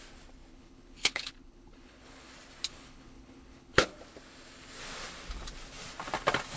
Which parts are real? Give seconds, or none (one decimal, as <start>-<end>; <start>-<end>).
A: 0.0-0.5; 2.3-2.7; 3.9-6.6